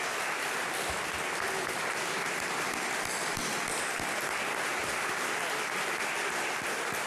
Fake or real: real